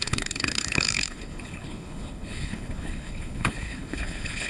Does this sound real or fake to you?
fake